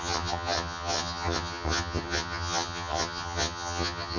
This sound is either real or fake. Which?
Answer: fake